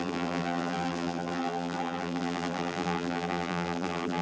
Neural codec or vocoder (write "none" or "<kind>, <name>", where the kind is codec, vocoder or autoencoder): vocoder, BigVGAN v2